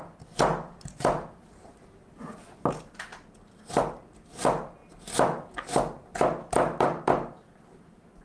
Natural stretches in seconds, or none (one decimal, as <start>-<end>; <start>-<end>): 3.1-4.2; 4.8-6.8